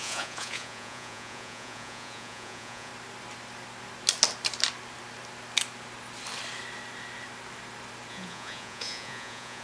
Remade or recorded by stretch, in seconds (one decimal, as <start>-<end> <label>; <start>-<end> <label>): 0.0-2.9 remade; 2.9-8.1 recorded; 8.1-9.6 remade